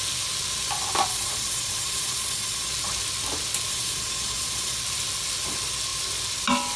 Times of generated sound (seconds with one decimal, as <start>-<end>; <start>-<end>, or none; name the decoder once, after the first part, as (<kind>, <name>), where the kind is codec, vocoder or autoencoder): 1.1-2.7 (vocoder, Vocos); 3.7-4.8